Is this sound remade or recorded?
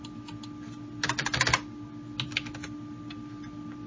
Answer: recorded